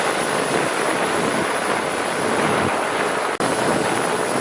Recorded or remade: recorded